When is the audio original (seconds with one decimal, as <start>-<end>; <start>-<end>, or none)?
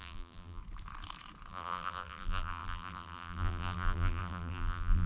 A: 0.6-1.5